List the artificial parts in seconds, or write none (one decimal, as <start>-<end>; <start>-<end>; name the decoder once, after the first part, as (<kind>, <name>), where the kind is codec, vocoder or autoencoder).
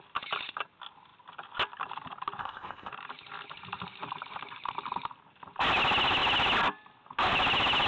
2.4-2.9 (codec, ZipCodec)